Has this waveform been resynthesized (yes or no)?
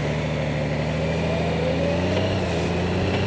no